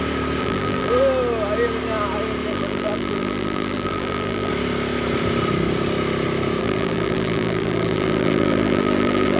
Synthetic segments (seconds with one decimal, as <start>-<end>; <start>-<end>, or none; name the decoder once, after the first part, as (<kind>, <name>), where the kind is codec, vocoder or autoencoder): 0.4-0.9 (vocoder, BigVGAN v2); 2.5-4.5; 6.6-9.4